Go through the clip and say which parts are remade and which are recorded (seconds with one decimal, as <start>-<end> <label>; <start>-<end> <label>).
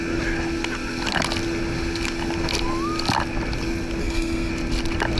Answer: 0.0-4.0 recorded; 4.0-4.5 remade; 4.5-5.2 recorded